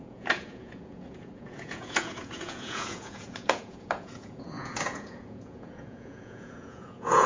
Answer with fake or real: fake